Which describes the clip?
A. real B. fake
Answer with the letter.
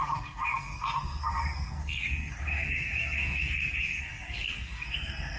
B